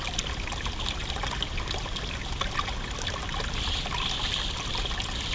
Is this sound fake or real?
real